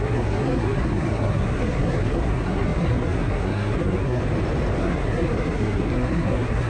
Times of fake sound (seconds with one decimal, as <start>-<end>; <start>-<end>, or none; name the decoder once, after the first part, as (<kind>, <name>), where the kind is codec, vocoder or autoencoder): 0.0-4.2 (codec, SNAC); 4.8-6.7